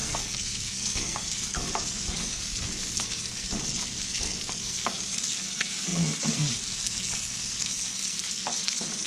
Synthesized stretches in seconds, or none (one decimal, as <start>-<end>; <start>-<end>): 0.0-9.1